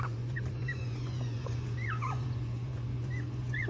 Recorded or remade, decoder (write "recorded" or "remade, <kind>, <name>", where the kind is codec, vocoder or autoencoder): remade, vocoder, Vocos